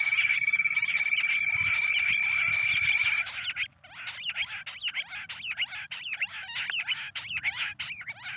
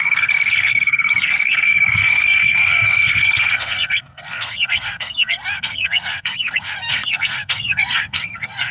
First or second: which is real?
first